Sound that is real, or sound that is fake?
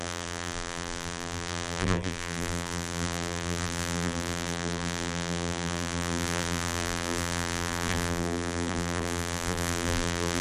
fake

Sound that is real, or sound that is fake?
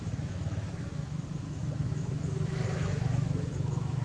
fake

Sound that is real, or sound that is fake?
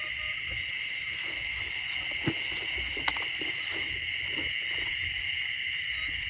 real